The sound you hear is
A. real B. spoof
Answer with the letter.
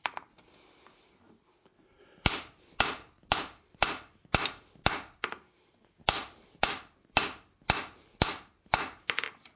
A